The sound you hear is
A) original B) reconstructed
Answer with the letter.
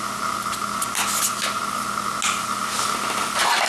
A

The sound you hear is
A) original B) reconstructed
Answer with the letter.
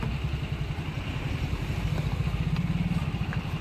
A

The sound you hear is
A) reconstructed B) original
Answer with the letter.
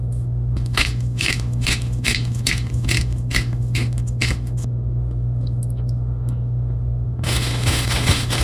A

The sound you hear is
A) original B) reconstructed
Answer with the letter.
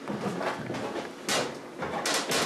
A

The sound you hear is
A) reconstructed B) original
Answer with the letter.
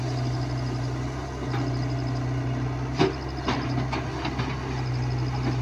B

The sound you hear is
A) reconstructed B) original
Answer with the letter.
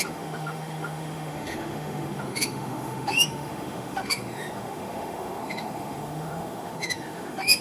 A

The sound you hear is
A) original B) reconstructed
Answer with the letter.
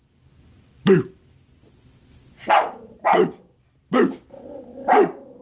A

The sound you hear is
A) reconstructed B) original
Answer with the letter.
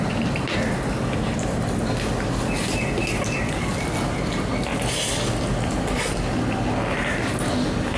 B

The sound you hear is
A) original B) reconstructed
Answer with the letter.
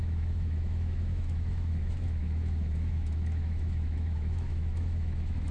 B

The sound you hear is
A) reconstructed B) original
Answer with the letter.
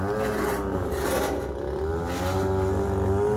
B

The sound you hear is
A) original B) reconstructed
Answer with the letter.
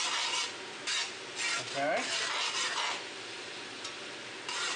A